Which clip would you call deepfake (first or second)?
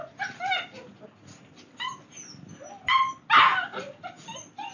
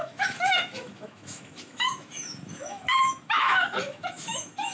second